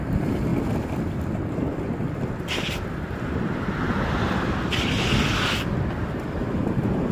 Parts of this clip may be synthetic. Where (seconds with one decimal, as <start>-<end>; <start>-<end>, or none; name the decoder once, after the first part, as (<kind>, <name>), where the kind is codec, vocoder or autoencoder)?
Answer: none